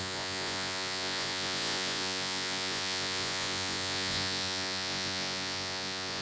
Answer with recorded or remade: remade